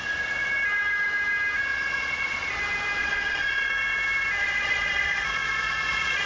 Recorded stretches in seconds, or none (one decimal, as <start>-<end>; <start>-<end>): 0.0-1.7; 2.6-3.0; 3.7-4.4